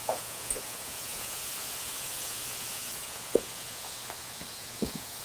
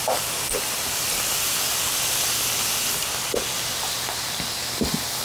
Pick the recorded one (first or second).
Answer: second